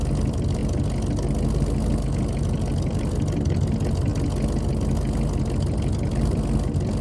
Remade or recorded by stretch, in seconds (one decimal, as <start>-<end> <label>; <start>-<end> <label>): 0.0-0.6 remade; 0.6-2.2 recorded; 2.2-4.1 remade; 4.1-5.7 recorded; 5.7-7.0 remade